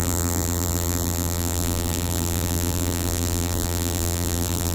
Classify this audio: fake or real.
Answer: fake